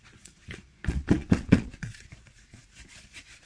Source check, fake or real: fake